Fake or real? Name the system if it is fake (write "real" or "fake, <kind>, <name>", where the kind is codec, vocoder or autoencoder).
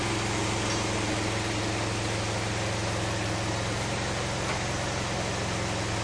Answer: real